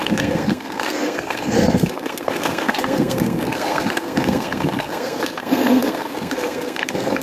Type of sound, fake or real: fake